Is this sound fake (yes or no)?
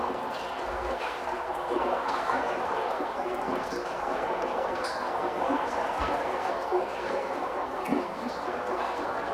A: yes